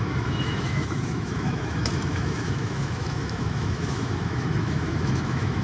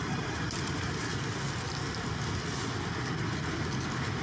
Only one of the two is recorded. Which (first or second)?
second